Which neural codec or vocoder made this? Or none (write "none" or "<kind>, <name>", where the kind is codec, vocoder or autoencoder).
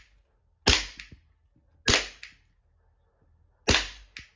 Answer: none